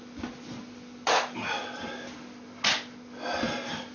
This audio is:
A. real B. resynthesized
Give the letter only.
A